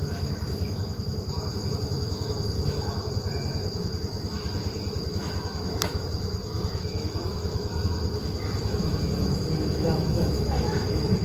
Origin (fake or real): fake